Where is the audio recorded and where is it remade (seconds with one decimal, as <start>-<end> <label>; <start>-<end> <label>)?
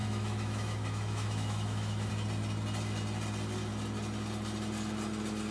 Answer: 0.0-2.1 remade; 2.1-5.5 recorded